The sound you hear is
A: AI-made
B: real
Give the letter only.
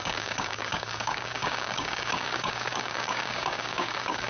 A